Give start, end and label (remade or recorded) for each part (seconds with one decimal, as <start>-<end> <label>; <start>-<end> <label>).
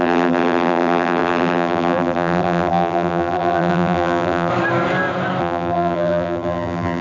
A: 0.0-4.5 remade; 4.5-5.4 recorded; 5.4-7.0 remade